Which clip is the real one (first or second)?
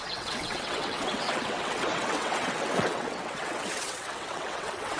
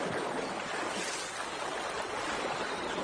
second